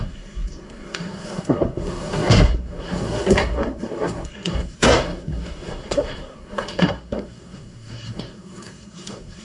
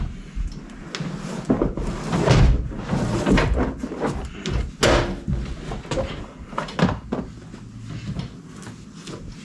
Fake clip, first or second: first